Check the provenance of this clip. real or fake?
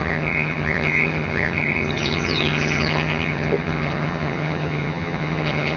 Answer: fake